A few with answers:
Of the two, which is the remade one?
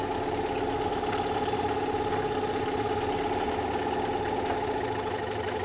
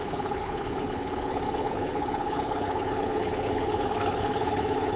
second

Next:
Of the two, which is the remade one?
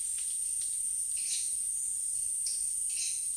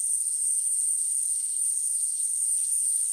second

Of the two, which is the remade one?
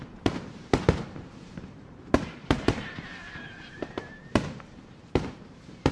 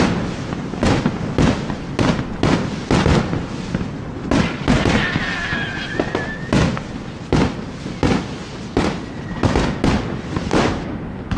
first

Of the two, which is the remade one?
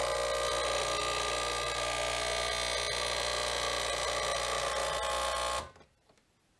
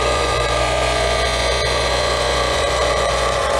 second